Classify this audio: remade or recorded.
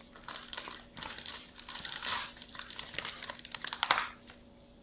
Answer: remade